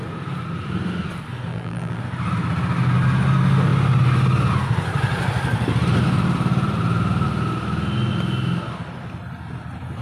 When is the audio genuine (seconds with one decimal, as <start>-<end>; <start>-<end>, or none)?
0.0-1.5; 2.0-10.0